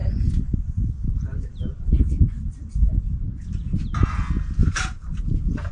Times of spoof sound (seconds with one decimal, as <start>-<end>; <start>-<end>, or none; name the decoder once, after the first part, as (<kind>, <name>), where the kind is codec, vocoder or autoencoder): 0.0-2.7 (vocoder, BigVGAN v2); 4.6-5.2